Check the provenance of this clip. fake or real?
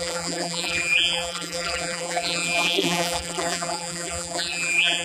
fake